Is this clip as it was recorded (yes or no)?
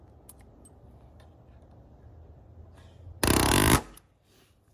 yes